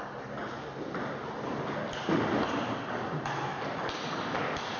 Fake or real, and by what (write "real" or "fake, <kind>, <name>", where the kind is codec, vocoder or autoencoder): real